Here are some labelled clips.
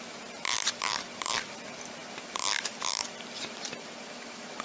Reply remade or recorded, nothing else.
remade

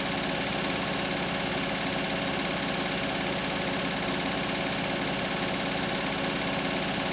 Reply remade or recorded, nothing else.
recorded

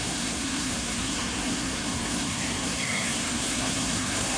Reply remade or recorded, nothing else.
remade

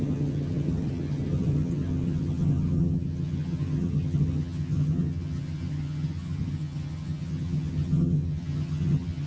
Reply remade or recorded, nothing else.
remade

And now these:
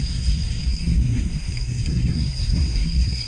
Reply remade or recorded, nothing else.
remade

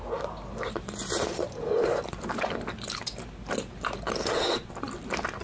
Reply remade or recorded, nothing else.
recorded